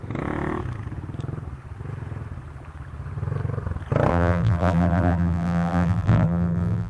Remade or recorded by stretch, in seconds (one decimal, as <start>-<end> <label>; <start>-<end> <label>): 0.0-4.1 recorded; 4.1-6.9 remade